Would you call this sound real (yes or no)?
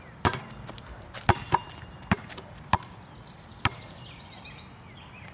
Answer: no